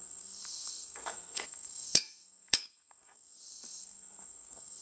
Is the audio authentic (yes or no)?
no